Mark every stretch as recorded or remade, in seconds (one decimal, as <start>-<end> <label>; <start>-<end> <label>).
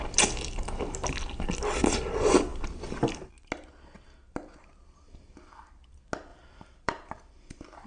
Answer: 0.0-2.5 recorded; 2.5-3.3 remade; 3.3-6.3 recorded; 6.3-7.9 remade